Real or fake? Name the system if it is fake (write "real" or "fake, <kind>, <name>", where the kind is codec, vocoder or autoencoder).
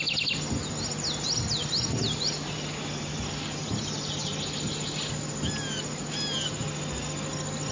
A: real